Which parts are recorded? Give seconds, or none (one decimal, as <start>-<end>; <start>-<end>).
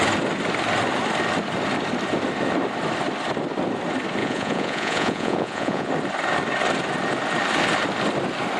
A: 0.0-4.2; 5.9-8.6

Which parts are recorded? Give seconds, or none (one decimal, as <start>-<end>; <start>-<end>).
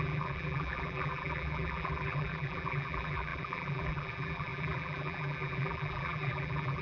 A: none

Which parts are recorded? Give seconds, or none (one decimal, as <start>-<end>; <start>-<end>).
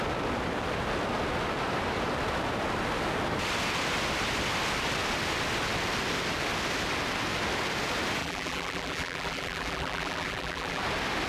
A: 0.0-8.2; 10.8-11.3